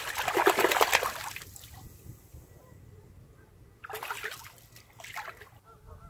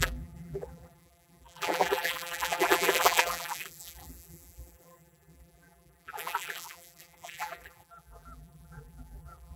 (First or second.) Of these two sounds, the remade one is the second